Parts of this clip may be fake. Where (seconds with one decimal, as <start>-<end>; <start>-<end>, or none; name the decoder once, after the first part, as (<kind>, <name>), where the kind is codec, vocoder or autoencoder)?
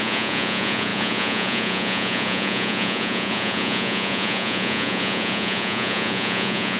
0.0-6.8 (vocoder, Vocos)